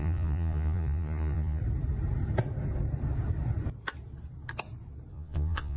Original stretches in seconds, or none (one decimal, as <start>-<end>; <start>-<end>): 1.6-5.1